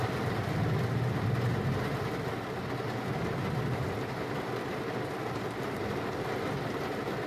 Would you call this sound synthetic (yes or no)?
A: no